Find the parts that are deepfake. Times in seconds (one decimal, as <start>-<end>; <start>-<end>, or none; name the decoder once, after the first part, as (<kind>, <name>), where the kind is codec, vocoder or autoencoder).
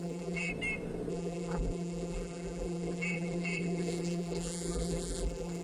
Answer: 0.0-0.5 (vocoder, BigVGAN v2); 1.1-5.6